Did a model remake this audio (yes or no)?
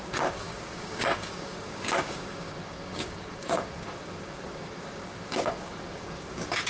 yes